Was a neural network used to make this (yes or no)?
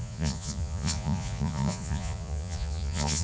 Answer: yes